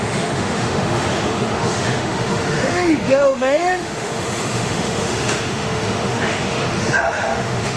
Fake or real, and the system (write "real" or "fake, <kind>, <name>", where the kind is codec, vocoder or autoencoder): fake, autoencoder, DAC-VAE